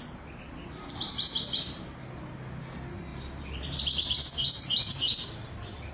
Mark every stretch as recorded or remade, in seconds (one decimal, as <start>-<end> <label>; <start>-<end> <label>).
0.0-0.6 recorded; 0.6-1.9 remade; 1.9-3.1 recorded; 3.1-5.4 remade; 5.4-5.9 recorded